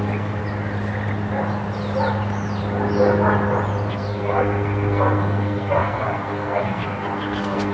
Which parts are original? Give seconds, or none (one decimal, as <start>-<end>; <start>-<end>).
0.4-3.9